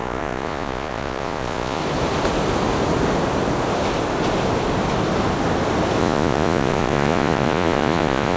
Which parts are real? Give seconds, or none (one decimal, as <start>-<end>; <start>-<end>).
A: 1.8-6.0